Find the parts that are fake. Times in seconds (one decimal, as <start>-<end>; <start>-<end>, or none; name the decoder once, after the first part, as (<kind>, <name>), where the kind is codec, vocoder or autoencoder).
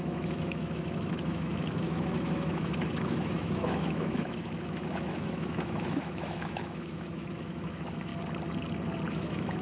0.0-8.1 (autoencoder, DAC-VAE); 9.1-9.6